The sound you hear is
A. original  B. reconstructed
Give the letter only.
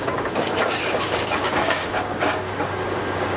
B